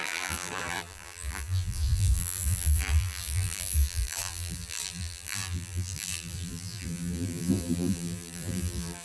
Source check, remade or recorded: remade